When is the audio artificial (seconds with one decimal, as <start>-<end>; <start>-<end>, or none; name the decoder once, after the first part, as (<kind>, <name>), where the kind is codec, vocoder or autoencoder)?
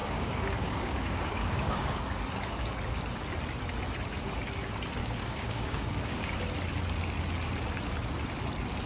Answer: 0.0-2.0 (codec, DAC); 5.0-6.4